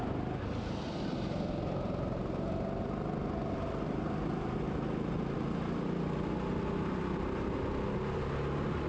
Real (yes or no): yes